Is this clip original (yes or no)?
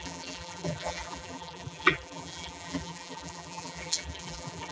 no